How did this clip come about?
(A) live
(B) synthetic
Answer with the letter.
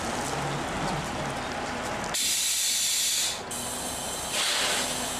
A